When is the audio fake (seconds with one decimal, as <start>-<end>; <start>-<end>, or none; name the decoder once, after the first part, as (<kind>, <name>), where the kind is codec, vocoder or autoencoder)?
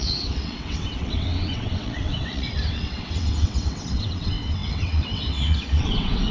0.0-6.3 (vocoder, WaveNeXt)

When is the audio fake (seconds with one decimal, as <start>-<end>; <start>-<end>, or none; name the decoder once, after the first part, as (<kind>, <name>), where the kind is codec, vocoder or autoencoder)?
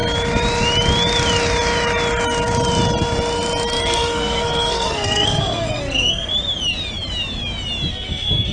3.8-6.3 (codec, SNAC); 7.9-8.5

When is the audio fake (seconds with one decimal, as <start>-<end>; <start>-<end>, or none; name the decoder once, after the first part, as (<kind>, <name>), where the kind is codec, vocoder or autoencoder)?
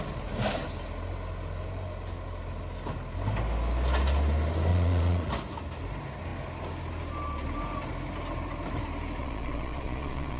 4.7-5.3 (vocoder, Vocos); 9.2-10.4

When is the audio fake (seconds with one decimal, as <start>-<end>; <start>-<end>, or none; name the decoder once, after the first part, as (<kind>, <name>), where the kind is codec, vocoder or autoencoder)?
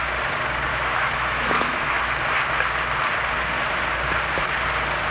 0.7-2.0 (autoencoder, DAC-VAE)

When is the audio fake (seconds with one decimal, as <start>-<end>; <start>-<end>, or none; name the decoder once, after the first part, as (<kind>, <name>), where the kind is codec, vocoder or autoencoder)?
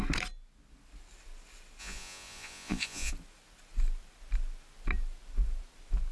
1.8-3.1 (vocoder, Vocos)